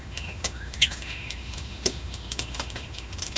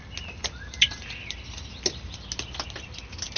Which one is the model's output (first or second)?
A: first